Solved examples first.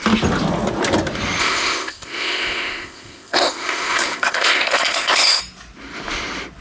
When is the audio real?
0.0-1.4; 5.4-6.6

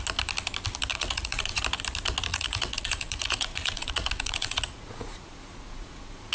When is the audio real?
0.0-0.9; 1.6-2.3

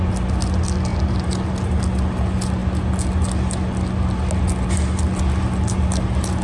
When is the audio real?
0.0-0.9; 1.8-6.4

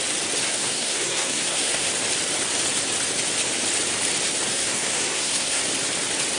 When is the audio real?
0.0-0.5; 1.9-4.5; 5.6-6.4

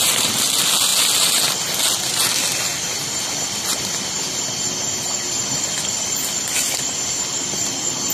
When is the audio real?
0.0-8.1

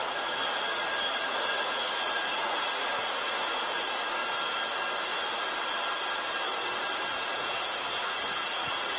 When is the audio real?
3.6-7.1

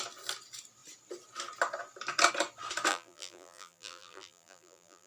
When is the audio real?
0.0-2.9

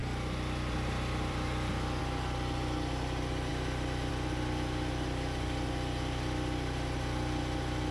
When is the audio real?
3.5-4.1